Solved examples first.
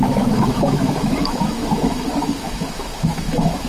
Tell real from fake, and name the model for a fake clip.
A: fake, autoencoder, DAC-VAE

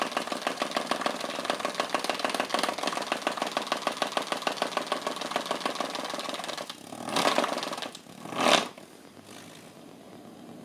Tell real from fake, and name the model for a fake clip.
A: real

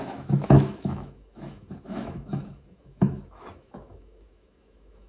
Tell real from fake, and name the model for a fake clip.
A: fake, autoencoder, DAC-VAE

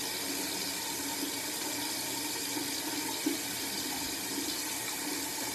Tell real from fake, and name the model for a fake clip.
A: real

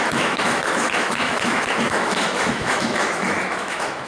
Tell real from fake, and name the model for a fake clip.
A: fake, autoencoder, DAC-VAE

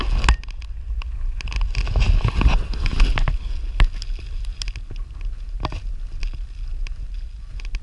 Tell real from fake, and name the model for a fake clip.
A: real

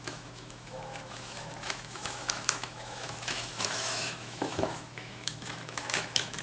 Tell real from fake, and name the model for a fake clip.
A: fake, autoencoder, DAC-VAE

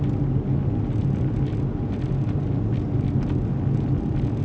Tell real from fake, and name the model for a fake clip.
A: real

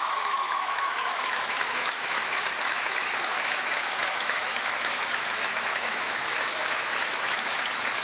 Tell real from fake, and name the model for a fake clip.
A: fake, autoencoder, DAC-VAE